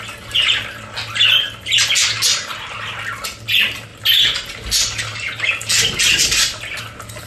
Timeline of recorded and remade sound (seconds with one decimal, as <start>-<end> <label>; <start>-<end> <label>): 0.0-7.3 recorded